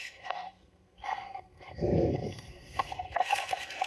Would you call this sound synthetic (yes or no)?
yes